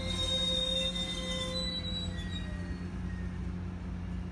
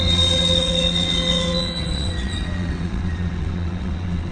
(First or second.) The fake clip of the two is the second